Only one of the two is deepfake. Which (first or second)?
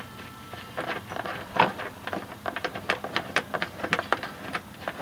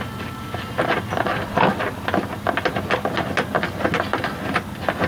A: first